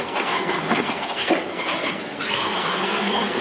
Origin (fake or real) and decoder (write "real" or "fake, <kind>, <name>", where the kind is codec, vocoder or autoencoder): fake, codec, SNAC